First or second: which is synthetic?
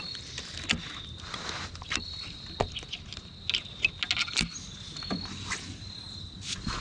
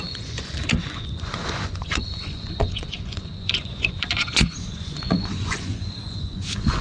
second